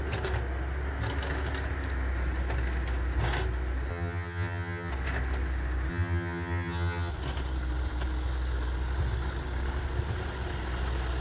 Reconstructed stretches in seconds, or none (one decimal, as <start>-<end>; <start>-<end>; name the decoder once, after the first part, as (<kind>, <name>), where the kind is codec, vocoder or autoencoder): 3.9-4.9 (vocoder, HiFi-GAN); 5.9-7.1